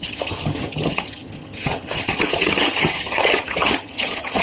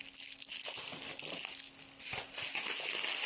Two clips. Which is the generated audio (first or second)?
first